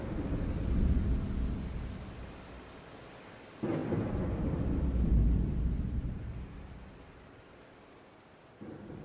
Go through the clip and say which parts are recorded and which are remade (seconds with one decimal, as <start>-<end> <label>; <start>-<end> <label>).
0.0-9.0 recorded